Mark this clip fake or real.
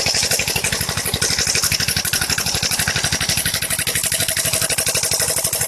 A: real